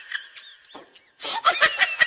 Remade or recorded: recorded